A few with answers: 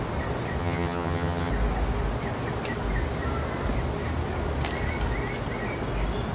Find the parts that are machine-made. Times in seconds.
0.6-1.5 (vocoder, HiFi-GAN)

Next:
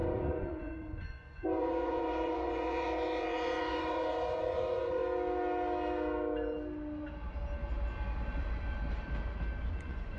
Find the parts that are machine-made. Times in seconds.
0.0-5.0 (vocoder, Vocos); 9.7-10.2